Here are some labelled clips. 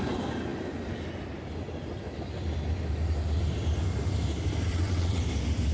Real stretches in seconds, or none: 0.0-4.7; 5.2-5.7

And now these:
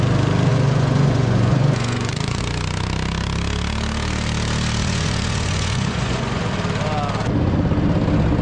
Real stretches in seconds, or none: 0.0-0.5; 2.4-4.8; 6.5-8.4